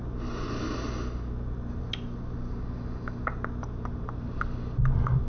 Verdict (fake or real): real